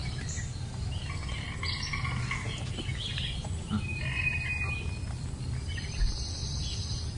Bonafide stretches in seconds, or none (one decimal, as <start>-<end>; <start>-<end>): 0.0-7.2